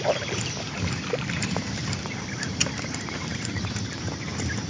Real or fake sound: real